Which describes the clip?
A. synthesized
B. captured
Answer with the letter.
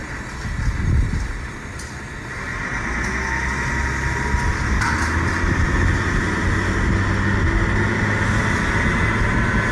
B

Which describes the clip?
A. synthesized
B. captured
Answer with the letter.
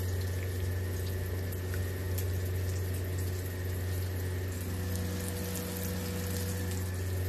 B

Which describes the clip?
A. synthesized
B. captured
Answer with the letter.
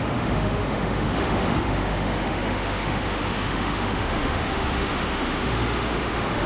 A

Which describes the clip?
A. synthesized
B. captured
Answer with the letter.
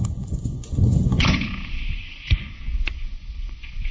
A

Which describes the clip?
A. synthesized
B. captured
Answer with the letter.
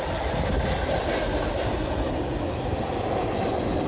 B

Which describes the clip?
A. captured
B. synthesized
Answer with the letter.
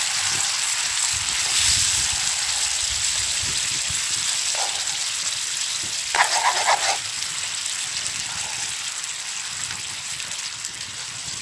A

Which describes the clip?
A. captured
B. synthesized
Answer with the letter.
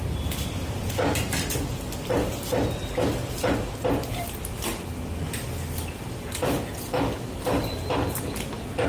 A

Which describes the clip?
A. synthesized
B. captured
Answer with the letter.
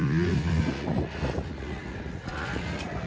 A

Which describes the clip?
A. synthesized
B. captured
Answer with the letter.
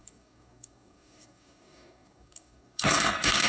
A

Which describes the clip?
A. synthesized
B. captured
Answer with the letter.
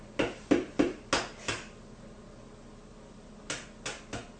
B